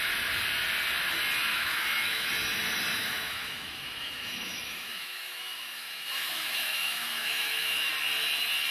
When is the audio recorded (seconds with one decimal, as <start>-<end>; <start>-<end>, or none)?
0.0-1.5; 2.3-2.9; 7.9-8.7